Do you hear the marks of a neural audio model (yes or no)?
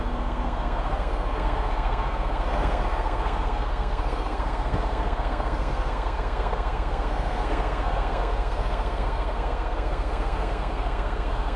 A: yes